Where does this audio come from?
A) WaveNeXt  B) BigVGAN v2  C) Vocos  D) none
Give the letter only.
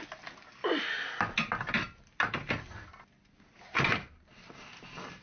D